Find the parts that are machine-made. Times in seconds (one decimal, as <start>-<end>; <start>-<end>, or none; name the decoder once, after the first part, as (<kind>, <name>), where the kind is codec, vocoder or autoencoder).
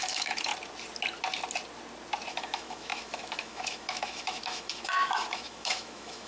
0.0-0.5 (autoencoder, DAC-VAE); 2.3-6.3